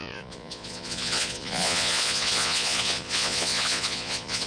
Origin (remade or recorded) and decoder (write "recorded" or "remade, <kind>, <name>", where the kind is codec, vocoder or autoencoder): remade, vocoder, Vocos